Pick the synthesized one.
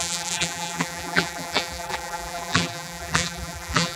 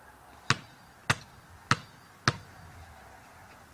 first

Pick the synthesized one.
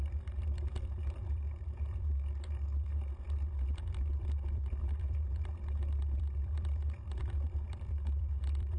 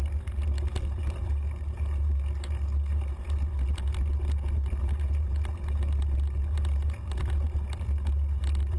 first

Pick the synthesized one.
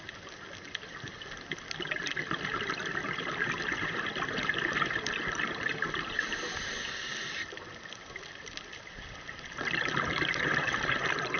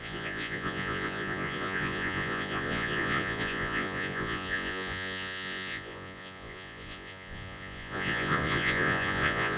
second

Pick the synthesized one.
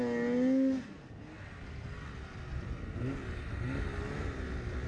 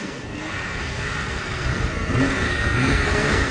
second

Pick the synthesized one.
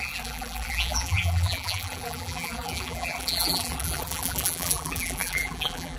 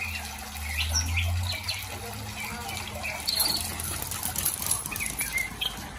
first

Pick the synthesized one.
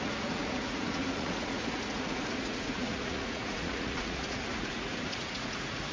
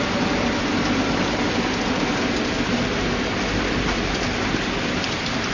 first